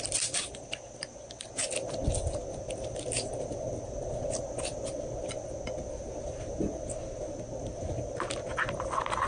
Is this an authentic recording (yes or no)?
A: yes